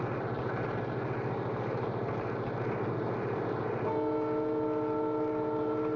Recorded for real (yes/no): yes